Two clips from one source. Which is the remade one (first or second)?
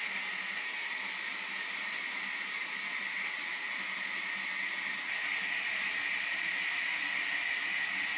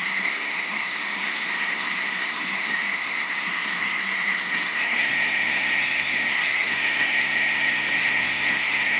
second